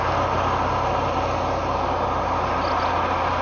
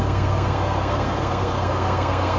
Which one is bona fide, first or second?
first